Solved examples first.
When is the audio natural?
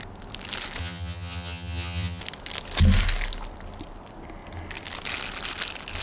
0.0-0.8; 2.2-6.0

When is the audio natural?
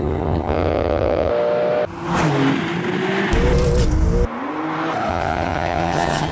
1.3-5.1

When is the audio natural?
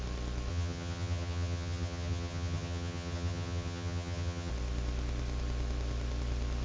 0.0-0.5; 4.5-6.6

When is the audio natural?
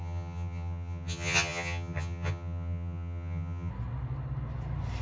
3.7-5.0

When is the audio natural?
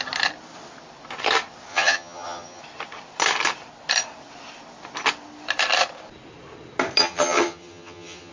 0.0-1.7; 2.6-7.0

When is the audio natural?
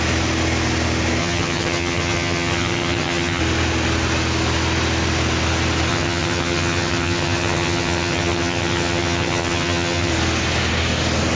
0.0-1.2; 3.4-5.9; 10.1-11.4